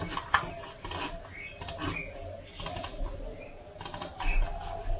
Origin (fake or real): real